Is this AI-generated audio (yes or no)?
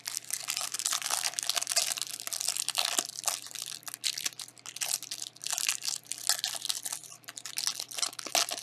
no